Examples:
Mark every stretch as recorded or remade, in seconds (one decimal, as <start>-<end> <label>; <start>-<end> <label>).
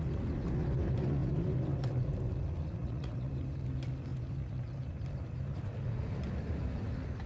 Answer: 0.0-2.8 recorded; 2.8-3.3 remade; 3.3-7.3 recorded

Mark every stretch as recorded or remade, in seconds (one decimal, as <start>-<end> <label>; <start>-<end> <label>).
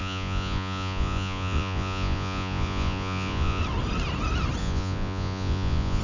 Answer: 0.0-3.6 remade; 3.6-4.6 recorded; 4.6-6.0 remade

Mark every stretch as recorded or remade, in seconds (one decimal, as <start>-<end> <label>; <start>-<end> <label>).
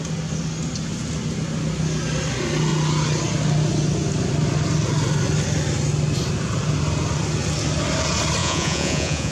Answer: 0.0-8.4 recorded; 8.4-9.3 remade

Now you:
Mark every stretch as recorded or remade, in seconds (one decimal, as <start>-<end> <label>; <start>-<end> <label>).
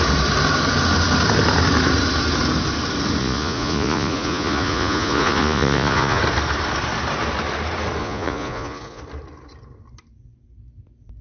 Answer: 0.0-3.2 recorded; 3.2-6.2 remade; 6.2-8.0 recorded; 8.0-9.0 remade; 9.0-11.2 recorded